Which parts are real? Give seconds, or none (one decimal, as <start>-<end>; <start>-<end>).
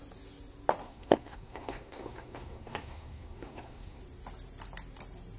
0.0-0.8; 4.0-5.4